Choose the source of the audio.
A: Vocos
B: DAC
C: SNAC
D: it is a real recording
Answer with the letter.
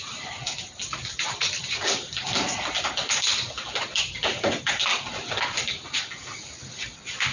D